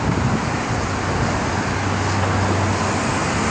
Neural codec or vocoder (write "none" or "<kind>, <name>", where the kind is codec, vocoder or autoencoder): none